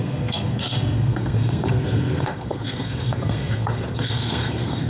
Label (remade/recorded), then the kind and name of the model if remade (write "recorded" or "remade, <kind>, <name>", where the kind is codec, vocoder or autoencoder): remade, codec, SNAC